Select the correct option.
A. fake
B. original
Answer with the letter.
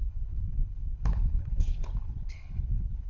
A